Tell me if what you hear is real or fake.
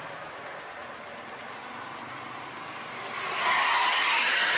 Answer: real